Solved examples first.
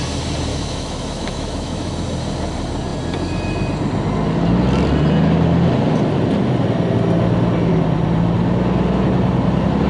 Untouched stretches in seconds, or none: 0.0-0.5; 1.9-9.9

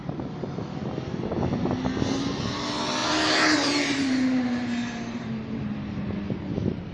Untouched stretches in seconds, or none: 0.8-3.0; 5.7-6.9

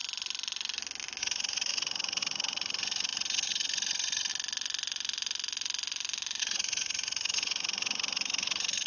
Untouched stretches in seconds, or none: 0.0-1.2; 4.3-6.4

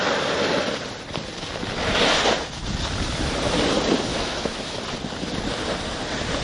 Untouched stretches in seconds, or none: 0.0-4.1; 4.8-6.4

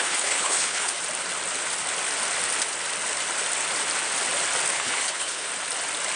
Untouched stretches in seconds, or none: 1.0-4.7; 5.5-6.2

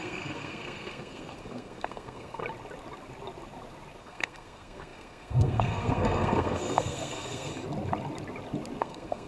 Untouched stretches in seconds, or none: 2.4-4.0; 7.5-8.8